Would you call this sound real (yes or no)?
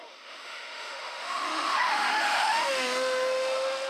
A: no